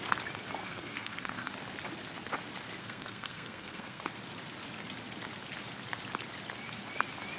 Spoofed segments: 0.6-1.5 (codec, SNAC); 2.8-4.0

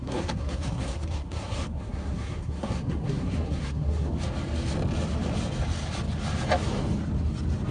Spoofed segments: 0.0-4.1 (codec, SNAC)

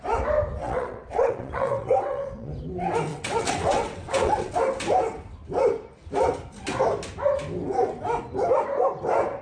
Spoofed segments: 0.6-2.5 (vocoder, WaveNeXt); 3.1-4.5

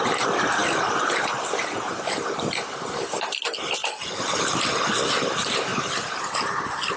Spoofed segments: 3.8-5.2 (vocoder, BigVGAN v2)

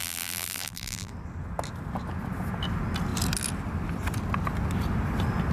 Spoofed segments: 0.0-1.1 (vocoder, BigVGAN v2)

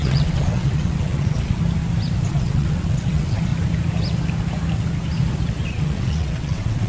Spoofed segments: 0.0-1.6 (vocoder, WaveNeXt); 2.3-3.5; 5.7-6.9

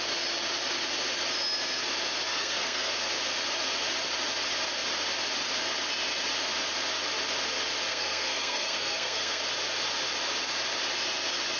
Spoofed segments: 2.3-2.9 (codec, SNAC); 7.9-9.4